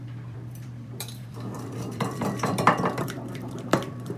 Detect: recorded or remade remade